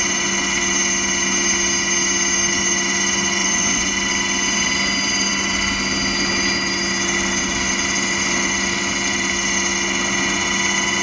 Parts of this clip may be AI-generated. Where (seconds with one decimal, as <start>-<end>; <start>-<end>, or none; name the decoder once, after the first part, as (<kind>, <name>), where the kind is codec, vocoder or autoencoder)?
3.4-3.9 (vocoder, Vocos)